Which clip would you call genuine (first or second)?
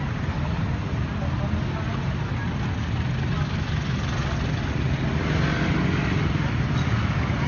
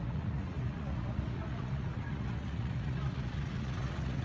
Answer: first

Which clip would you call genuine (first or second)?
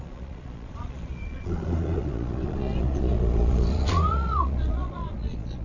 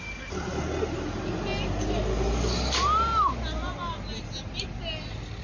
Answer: second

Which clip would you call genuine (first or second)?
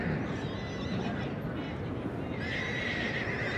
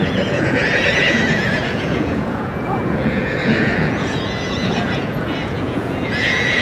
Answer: first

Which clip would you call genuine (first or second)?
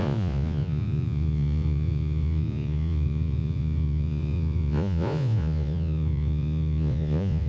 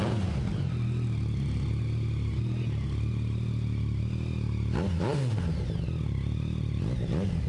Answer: second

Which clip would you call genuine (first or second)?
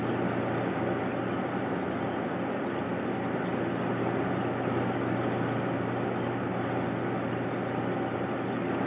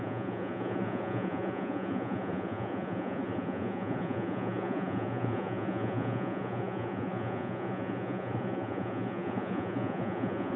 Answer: first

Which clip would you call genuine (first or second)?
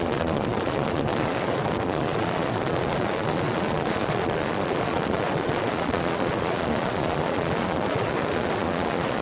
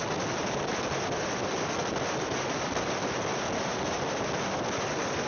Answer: second